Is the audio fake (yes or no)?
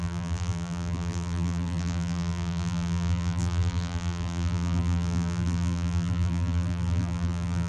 yes